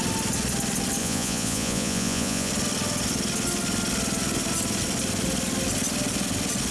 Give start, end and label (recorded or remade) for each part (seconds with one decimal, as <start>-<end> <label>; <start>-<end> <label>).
0.0-1.0 recorded; 1.0-2.5 remade; 2.5-6.7 recorded